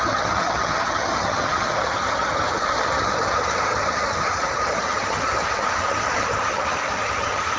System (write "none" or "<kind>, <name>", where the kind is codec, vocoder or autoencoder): vocoder, HiFi-GAN